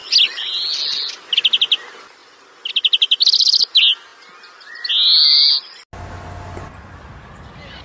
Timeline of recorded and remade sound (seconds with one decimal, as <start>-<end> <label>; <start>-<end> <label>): 0.0-7.8 recorded